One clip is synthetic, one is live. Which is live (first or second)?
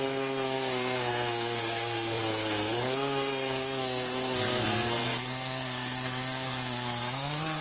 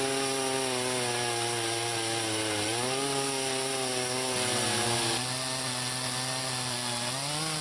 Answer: second